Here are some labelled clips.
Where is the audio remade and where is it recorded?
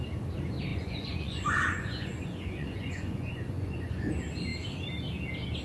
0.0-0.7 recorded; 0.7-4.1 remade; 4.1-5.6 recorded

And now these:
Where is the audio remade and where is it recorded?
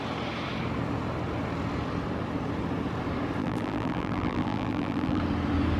0.0-3.4 recorded; 3.4-5.2 remade; 5.2-5.8 recorded